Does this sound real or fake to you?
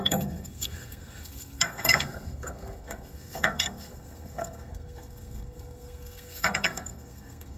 fake